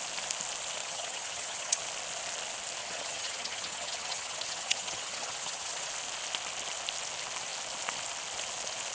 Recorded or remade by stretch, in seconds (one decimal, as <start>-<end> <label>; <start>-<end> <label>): 0.0-0.8 recorded; 0.8-1.8 remade; 1.8-2.8 recorded; 2.8-5.9 remade; 5.9-8.9 recorded